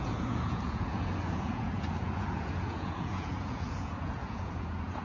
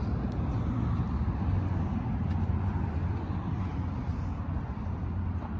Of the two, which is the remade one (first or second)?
first